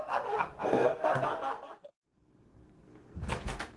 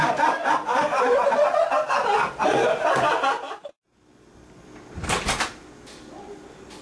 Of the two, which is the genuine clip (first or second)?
second